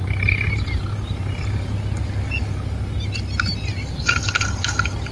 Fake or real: real